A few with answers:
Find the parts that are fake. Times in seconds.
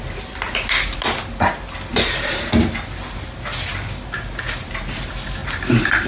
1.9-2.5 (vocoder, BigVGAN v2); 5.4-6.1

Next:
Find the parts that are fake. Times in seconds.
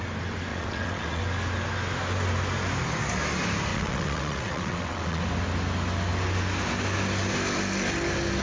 0.5-1.2 (vocoder, WaveNeXt); 3.7-5.2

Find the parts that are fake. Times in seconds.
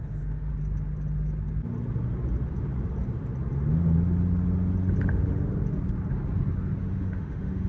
0.0-0.5 (autoencoder, DAC-VAE); 5.1-5.5; 6.8-7.7